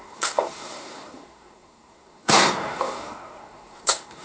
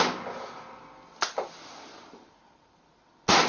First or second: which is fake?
first